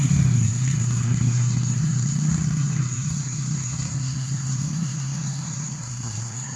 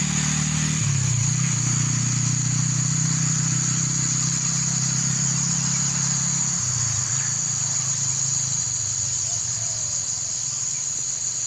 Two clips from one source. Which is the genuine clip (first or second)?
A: second